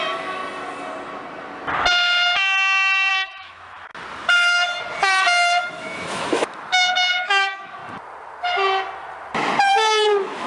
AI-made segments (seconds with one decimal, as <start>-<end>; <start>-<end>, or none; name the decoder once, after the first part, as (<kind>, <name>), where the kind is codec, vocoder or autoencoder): 0.0-0.4 (autoencoder, DAC-VAE); 3.1-3.9; 5.6-7.8; 9.7-10.5